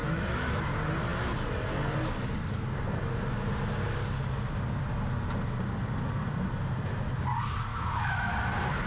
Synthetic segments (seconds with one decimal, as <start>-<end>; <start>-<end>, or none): 0.0-0.6; 7.7-8.3